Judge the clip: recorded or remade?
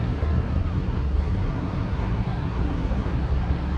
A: remade